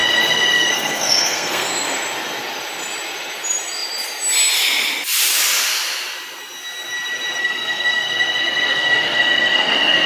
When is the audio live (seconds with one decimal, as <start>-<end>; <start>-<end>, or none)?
1.7-7.4